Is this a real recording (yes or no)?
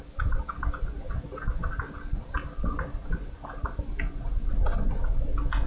yes